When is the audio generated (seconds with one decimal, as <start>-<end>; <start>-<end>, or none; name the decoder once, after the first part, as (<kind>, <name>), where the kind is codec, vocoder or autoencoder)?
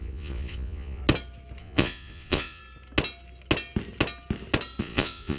0.0-1.0 (vocoder, Vocos); 1.6-2.6; 4.8-5.4